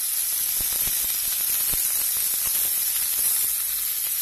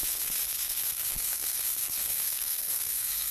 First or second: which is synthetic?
second